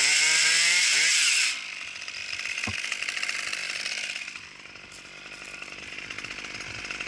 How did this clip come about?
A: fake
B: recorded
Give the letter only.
A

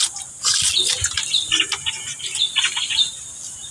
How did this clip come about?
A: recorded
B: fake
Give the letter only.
B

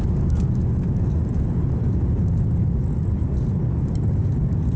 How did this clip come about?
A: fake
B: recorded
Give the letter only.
B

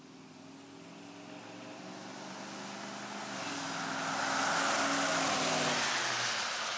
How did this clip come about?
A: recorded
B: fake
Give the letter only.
A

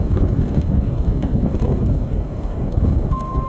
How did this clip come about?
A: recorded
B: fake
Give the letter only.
B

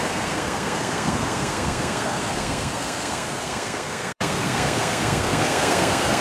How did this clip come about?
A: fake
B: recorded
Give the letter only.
A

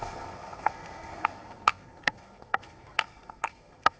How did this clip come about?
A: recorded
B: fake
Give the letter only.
B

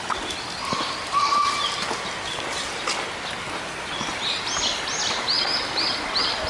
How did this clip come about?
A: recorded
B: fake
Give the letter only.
A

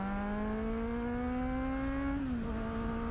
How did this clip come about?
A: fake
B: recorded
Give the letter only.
B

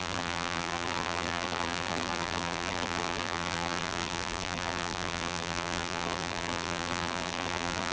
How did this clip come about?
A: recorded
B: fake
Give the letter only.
B